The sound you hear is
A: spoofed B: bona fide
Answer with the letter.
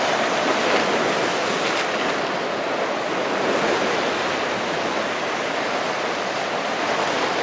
B